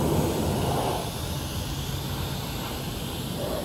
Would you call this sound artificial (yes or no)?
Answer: no